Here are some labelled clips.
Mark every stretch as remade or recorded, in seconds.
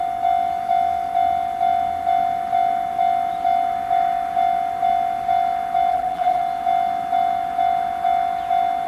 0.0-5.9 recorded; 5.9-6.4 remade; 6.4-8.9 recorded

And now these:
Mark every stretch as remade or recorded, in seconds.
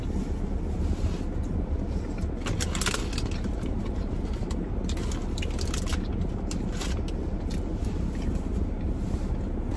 0.0-9.8 recorded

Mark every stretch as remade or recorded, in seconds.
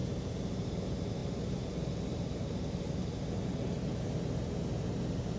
0.0-5.4 recorded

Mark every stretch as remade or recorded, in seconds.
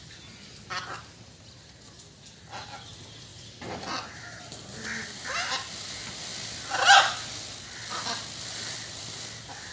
0.0-6.3 recorded; 6.3-9.0 remade; 9.0-9.7 recorded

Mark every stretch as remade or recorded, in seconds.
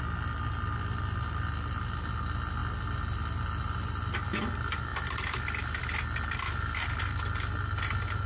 0.0-8.3 recorded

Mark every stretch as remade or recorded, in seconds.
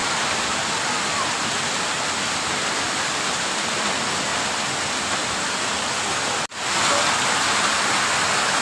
0.0-3.7 remade; 3.7-8.6 recorded